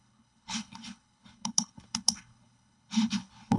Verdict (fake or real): fake